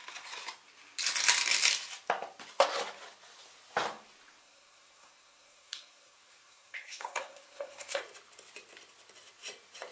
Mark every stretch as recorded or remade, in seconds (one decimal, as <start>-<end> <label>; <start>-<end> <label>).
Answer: 0.0-4.4 recorded; 4.4-8.0 remade; 8.0-9.9 recorded